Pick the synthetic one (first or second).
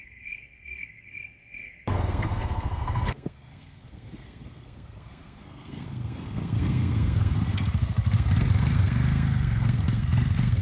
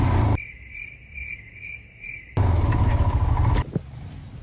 first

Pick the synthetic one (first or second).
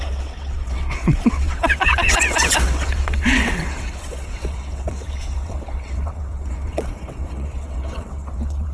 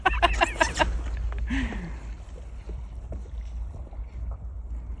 first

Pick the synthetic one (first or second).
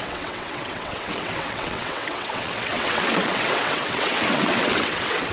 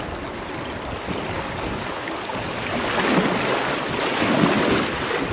first